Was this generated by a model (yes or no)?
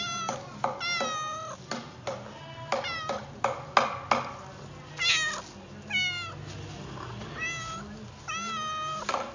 no